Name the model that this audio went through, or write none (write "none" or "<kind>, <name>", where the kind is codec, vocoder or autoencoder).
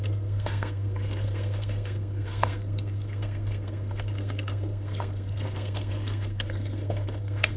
codec, SNAC